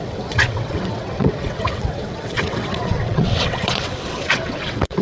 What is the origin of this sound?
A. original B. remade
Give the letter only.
B